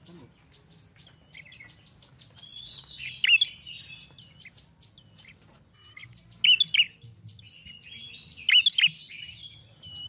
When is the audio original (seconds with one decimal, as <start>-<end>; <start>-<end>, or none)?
0.0-2.5; 3.0-10.1